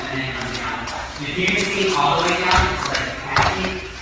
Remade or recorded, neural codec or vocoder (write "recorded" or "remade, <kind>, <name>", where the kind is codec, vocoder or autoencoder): remade, vocoder, Vocos